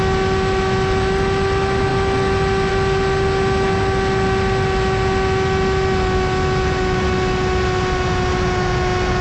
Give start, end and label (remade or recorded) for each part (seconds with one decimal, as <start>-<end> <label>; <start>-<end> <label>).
0.0-9.2 recorded